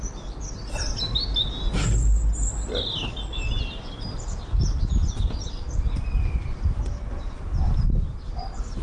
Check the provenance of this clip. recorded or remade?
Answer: recorded